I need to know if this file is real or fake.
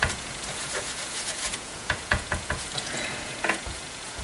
fake